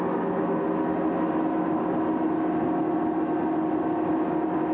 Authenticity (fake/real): real